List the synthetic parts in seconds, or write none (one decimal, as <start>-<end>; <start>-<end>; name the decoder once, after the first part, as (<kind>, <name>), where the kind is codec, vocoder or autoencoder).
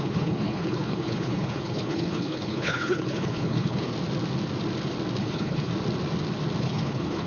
0.0-3.9 (codec, HILCodec); 5.2-5.7; 6.6-7.3